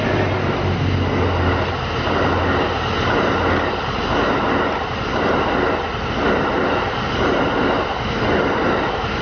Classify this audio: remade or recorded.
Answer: recorded